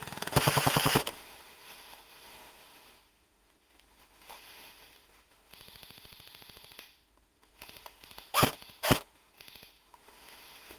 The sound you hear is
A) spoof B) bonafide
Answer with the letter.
A